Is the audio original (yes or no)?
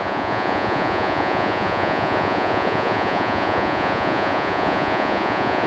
no